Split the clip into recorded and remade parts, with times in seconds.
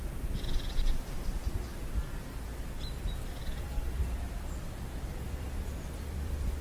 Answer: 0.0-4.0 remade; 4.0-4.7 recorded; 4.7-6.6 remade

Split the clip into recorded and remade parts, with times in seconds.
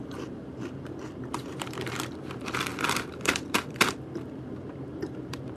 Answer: 0.0-5.6 remade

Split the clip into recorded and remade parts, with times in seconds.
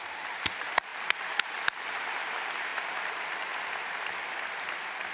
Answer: 0.0-0.9 recorded; 0.9-1.6 remade; 1.6-5.1 recorded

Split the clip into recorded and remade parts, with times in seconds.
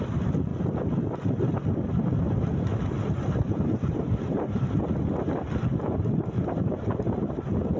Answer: 0.0-2.7 recorded; 2.7-4.8 remade; 4.8-5.7 recorded; 5.7-7.2 remade; 7.2-7.8 recorded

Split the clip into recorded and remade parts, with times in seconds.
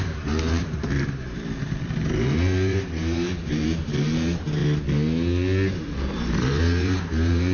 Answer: 0.0-4.6 remade; 4.6-5.8 recorded; 5.8-7.5 remade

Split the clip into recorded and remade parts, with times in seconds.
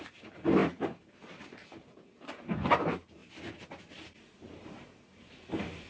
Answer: 0.0-3.2 remade; 3.2-3.9 recorded; 3.9-5.9 remade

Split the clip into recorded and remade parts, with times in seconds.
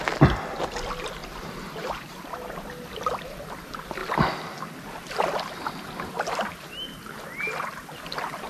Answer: 0.0-1.2 recorded; 1.2-2.1 remade; 2.1-8.5 recorded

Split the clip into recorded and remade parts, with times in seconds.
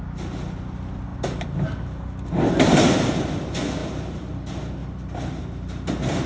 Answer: 0.0-4.8 recorded; 4.8-5.4 remade; 5.4-6.3 recorded